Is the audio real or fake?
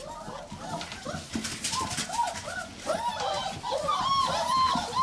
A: real